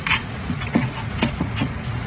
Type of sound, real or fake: fake